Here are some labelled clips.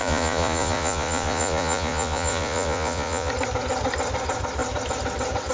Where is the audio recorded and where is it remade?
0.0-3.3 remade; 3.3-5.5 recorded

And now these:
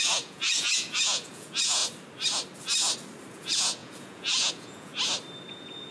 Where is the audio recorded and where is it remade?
0.0-1.8 remade; 1.8-3.3 recorded; 3.3-4.9 remade; 4.9-5.5 recorded; 5.5-5.9 remade

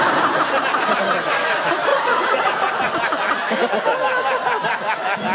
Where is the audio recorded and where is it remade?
0.0-1.9 recorded; 1.9-2.8 remade; 2.8-5.3 recorded

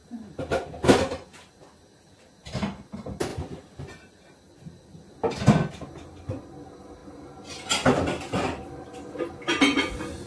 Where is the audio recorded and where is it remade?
0.0-10.3 recorded

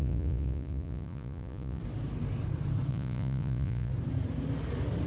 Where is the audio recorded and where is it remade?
0.0-1.8 remade; 1.8-2.9 recorded; 2.9-3.9 remade; 3.9-5.1 recorded

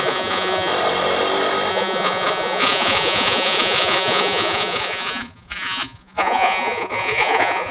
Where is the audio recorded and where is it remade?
0.0-0.7 remade; 0.7-1.7 recorded; 1.7-7.7 remade

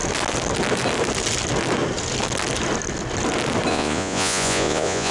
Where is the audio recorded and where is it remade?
0.0-3.7 recorded; 3.7-5.1 remade

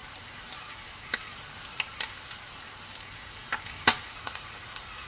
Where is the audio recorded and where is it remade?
0.0-4.0 recorded; 4.0-5.1 remade